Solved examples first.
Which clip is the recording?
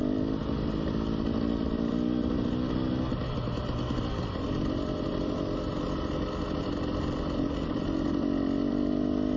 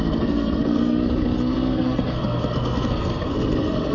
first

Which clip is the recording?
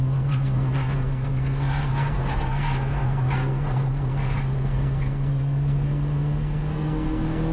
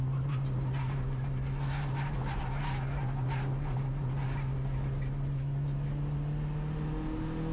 second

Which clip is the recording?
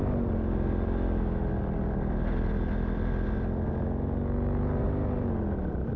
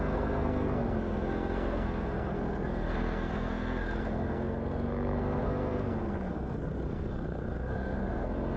first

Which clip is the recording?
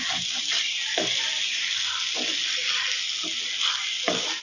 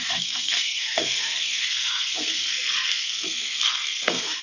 first